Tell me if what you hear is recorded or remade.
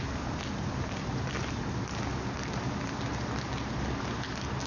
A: recorded